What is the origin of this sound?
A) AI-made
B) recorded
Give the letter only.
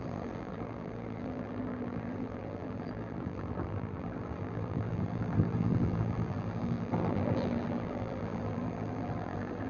A